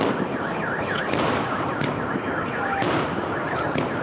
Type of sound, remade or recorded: recorded